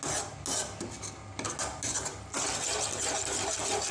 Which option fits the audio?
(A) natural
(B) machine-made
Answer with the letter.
A